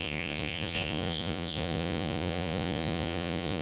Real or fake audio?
fake